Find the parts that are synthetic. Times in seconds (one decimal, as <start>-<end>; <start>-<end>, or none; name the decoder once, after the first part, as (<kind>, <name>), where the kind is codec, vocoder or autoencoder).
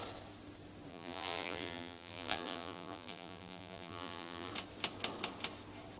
0.9-4.5 (vocoder, BigVGAN v2)